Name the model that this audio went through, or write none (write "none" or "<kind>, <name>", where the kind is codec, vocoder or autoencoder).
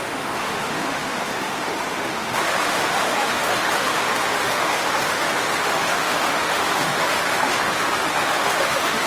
autoencoder, DAC-VAE